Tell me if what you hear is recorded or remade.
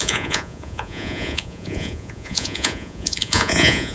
remade